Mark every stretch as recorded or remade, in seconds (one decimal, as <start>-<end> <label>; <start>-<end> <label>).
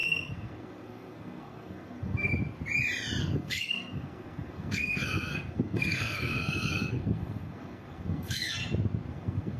0.0-2.3 remade; 2.3-3.2 recorded; 3.2-8.6 remade; 8.6-9.1 recorded; 9.1-9.6 remade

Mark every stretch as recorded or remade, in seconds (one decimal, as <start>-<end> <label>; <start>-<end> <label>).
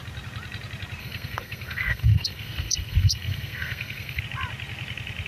0.0-1.0 recorded; 1.0-4.2 remade; 4.2-5.3 recorded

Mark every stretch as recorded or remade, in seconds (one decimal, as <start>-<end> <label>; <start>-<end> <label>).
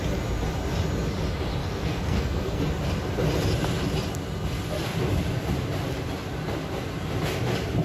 0.0-1.6 recorded; 1.6-2.6 remade; 2.6-7.8 recorded